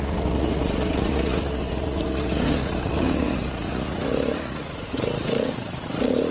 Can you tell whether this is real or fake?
fake